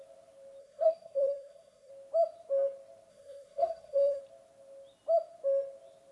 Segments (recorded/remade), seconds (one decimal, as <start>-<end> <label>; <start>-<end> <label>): 0.0-0.6 recorded; 0.6-1.9 remade; 1.9-3.1 recorded; 3.1-4.2 remade; 4.2-6.1 recorded